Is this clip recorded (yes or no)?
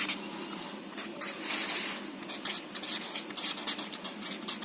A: yes